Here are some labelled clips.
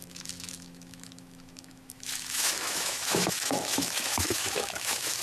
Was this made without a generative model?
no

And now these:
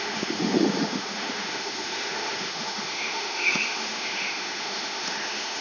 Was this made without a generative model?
no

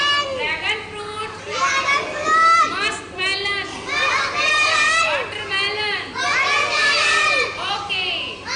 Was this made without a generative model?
yes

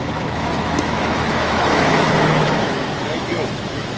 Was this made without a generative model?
no